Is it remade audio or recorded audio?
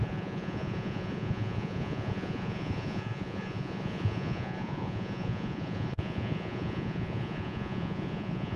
remade